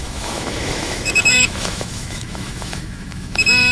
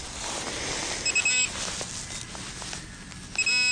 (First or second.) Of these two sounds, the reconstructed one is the first